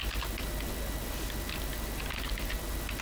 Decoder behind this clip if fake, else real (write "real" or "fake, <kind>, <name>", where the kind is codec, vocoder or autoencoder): real